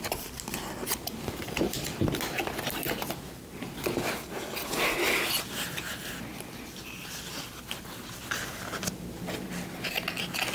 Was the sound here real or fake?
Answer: real